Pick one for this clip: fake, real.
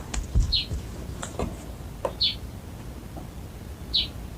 real